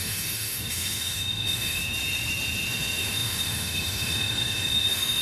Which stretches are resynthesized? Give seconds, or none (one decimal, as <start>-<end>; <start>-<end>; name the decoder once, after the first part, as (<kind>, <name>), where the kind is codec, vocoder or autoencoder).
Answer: 0.0-1.8 (autoencoder, DAC-VAE); 2.7-5.2